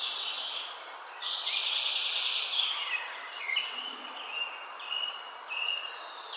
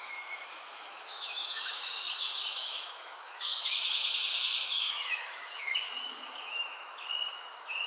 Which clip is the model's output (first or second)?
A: second